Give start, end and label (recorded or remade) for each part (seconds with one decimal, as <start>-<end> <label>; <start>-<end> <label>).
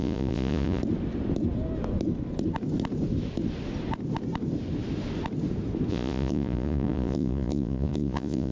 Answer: 0.0-0.8 remade; 0.8-5.9 recorded; 5.9-8.5 remade